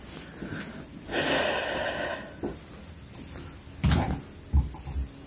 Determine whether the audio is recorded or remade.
recorded